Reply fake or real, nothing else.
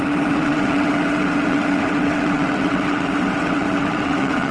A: fake